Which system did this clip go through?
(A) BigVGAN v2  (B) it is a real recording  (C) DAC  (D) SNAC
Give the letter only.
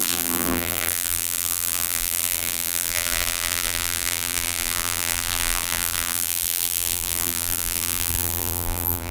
A